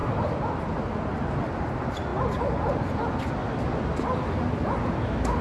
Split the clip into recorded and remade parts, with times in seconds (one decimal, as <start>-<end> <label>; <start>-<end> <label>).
0.0-5.4 recorded